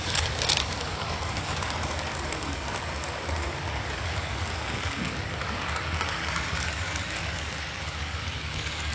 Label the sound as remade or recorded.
remade